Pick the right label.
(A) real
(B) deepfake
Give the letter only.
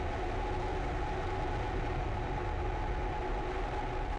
A